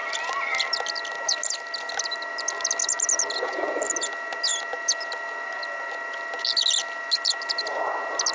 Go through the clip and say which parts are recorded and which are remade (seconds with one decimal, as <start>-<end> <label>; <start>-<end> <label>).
0.0-8.3 recorded